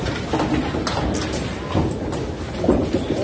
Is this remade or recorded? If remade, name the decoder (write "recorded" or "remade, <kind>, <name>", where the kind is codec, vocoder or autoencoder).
recorded